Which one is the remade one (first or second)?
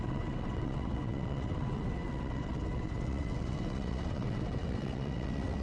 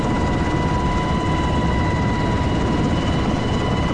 first